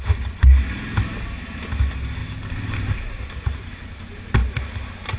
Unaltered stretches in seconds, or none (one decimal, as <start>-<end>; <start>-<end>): 0.0-2.2